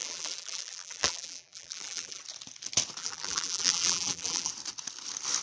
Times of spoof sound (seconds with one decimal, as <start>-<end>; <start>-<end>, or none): 0.0-2.2; 3.0-4.5